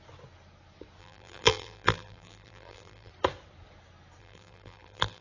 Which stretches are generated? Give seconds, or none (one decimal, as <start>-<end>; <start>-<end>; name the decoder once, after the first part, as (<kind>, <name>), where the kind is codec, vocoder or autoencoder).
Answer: 1.0-3.1 (vocoder, BigVGAN v2); 4.2-5.2